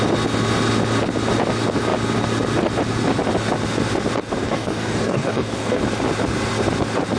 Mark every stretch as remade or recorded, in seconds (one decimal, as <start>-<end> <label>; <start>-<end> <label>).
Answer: 0.0-4.4 recorded; 4.4-5.8 remade; 5.8-7.2 recorded